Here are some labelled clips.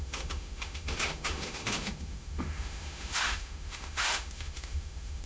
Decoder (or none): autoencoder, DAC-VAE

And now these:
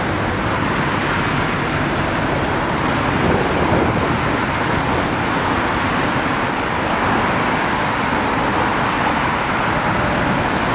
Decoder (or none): none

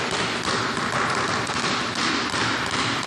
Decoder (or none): none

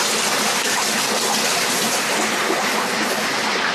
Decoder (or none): none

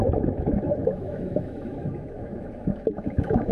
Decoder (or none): autoencoder, DAC-VAE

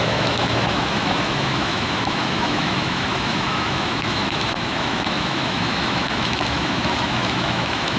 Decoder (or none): autoencoder, DAC-VAE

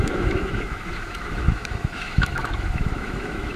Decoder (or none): autoencoder, DAC-VAE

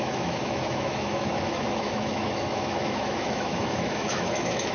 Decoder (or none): autoencoder, DAC-VAE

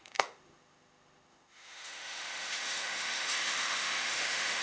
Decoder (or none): autoencoder, DAC-VAE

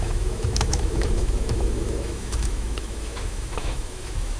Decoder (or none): autoencoder, DAC-VAE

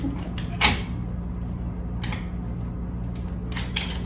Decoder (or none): none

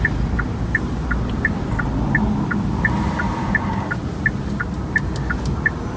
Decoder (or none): none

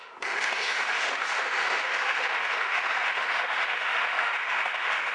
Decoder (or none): autoencoder, DAC-VAE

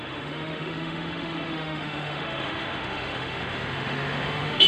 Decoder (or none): autoencoder, DAC-VAE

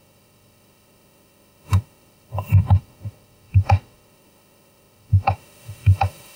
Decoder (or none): autoencoder, DAC-VAE